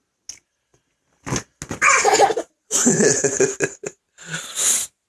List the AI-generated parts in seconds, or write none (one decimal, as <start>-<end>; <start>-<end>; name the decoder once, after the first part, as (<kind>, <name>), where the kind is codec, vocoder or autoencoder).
none